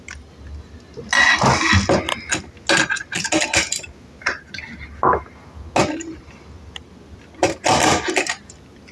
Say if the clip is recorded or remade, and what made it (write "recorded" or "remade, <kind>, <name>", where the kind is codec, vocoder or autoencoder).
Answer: recorded